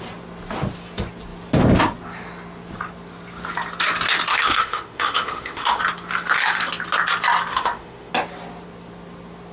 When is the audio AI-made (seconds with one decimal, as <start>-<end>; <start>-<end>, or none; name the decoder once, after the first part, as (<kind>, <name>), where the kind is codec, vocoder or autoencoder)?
4.3-5.8 (autoencoder, DAC-VAE); 7.5-8.1